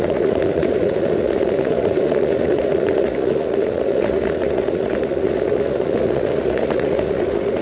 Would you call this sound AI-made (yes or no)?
yes